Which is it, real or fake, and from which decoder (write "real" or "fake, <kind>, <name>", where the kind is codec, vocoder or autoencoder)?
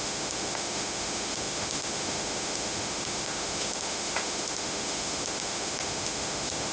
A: fake, autoencoder, DAC-VAE